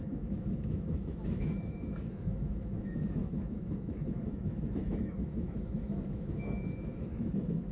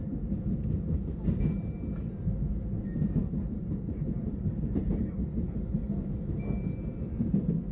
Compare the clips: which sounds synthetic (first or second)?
first